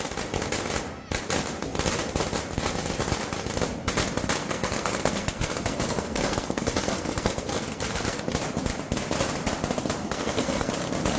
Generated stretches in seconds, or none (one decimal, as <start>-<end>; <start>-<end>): 4.4-8.2; 10.0-10.7